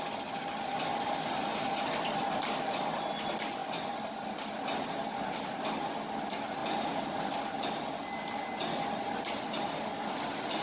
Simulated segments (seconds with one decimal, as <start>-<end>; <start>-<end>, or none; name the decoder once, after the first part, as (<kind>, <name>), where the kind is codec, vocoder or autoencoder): none

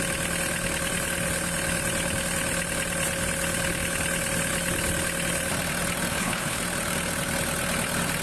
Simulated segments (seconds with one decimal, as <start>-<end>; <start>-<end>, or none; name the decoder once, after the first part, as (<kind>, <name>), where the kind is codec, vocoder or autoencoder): 6.1-6.6 (codec, HILCodec)

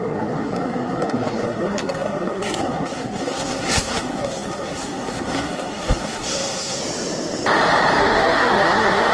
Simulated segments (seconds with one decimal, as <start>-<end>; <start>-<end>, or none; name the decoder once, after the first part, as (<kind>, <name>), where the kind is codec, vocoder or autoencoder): 0.0-6.8 (codec, SNAC); 8.0-9.1

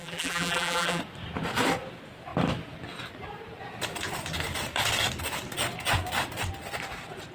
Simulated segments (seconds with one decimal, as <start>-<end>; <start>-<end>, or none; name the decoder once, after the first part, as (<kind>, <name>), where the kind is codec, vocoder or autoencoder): 0.0-1.0 (vocoder, BigVGAN v2)

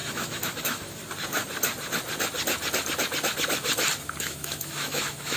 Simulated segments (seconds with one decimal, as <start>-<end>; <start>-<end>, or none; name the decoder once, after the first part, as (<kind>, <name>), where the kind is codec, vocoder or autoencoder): 0.0-1.0 (autoencoder, DAC-VAE); 4.2-5.4

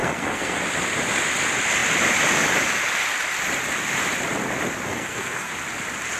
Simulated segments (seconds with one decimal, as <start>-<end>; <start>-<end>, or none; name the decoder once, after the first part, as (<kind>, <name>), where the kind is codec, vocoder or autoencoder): 0.0-0.6 (codec, SNAC); 4.9-5.5

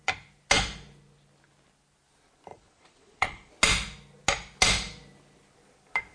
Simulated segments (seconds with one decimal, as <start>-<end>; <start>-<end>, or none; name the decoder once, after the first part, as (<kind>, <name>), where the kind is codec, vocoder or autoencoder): 2.5-3.5 (vocoder, Vocos)

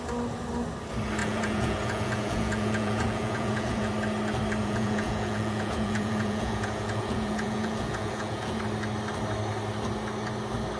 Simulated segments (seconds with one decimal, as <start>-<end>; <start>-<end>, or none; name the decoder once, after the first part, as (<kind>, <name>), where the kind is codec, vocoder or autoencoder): 1.2-3.9 (vocoder, Vocos); 4.6-8.6